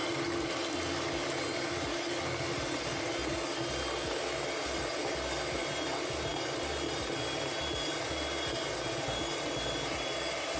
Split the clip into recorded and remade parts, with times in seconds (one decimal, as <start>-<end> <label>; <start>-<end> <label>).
0.0-10.6 recorded